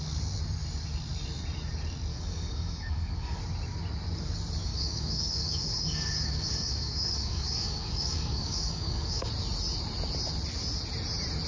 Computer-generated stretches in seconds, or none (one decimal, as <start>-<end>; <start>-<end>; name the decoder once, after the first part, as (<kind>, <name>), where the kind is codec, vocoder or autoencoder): 2.1-3.4 (codec, DAC); 4.7-9.3